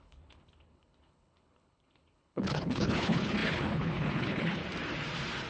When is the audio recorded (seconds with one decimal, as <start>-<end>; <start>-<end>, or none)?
4.6-5.5